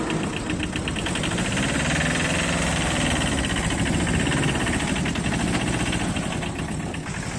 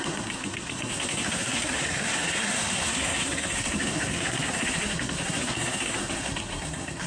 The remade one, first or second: second